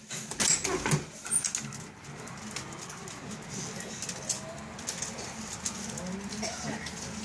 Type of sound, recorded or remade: recorded